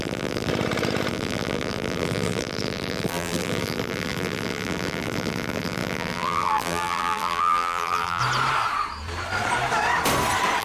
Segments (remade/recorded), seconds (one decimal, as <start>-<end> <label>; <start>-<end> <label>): 0.0-0.5 remade; 0.5-1.1 recorded; 1.1-8.2 remade; 8.2-10.6 recorded